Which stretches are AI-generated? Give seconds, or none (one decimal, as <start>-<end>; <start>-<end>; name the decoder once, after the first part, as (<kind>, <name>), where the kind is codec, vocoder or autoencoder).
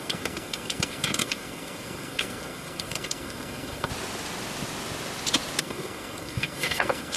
0.0-3.9 (codec, SNAC); 5.6-7.2